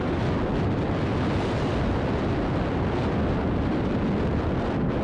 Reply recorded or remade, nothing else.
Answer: recorded